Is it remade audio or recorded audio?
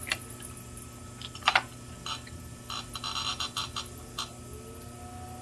recorded